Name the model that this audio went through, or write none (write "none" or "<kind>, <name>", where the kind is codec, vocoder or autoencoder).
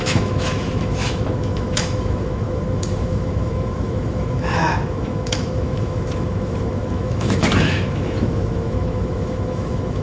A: autoencoder, DAC-VAE